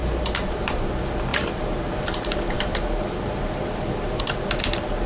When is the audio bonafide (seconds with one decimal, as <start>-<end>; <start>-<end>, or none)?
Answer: 0.9-1.3; 4.2-5.1